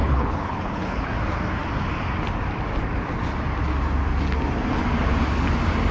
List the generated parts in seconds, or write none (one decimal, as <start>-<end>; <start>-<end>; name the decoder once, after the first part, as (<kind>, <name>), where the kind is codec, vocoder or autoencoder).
0.0-1.1 (codec, HILCodec)